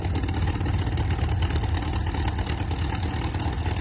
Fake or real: real